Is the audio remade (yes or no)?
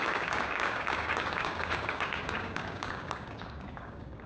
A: yes